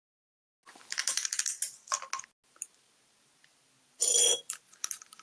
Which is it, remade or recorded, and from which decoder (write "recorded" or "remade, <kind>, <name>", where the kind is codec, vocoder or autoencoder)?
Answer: recorded